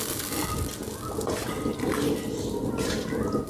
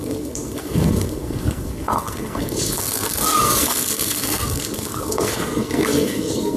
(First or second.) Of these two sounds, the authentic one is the first